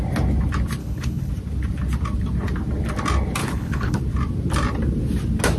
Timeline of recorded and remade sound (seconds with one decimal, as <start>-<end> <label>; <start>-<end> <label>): 0.0-0.8 recorded; 0.8-1.3 remade; 1.3-3.4 recorded; 3.4-4.0 remade; 4.0-5.6 recorded